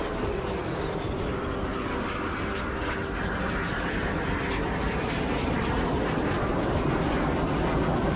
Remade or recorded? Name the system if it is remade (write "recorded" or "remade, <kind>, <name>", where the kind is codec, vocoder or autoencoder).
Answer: recorded